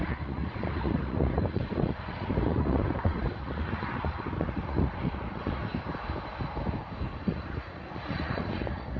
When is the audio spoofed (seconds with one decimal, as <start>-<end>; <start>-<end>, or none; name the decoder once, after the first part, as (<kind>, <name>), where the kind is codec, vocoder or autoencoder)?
0.0-5.6 (vocoder, Vocos); 7.2-9.0